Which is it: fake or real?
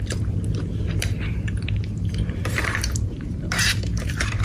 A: fake